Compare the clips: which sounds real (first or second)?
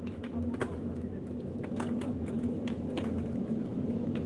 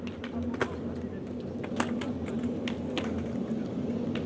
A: second